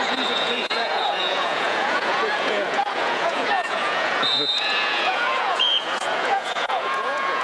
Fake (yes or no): yes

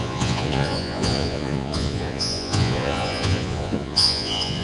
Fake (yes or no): yes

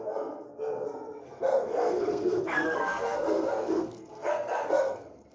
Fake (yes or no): yes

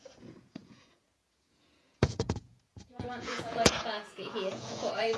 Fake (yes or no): yes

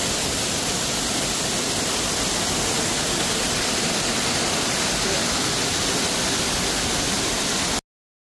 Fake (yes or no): no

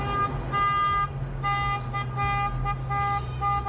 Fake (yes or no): no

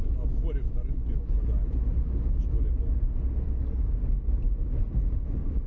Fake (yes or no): no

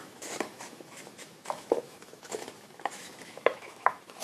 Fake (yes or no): yes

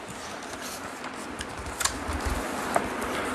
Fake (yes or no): no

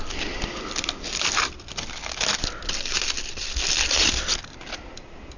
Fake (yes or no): no